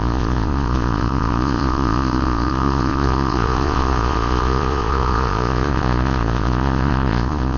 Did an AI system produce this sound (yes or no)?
yes